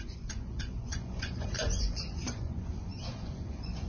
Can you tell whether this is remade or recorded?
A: remade